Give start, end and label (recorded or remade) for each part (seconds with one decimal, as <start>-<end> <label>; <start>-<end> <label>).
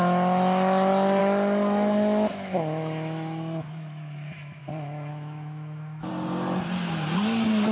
0.0-1.2 recorded; 1.2-4.6 remade; 4.6-5.1 recorded; 5.1-6.1 remade; 6.1-7.7 recorded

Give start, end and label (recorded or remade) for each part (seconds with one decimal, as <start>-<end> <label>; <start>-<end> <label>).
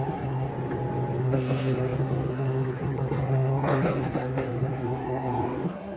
0.0-0.5 remade; 0.5-1.2 recorded; 1.2-6.0 remade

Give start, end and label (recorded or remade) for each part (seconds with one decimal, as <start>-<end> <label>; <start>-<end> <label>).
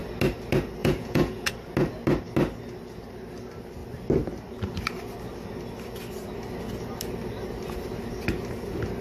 0.0-0.8 recorded; 0.8-1.5 remade; 1.5-9.0 recorded